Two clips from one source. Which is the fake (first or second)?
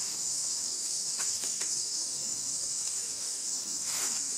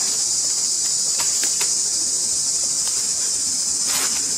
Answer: first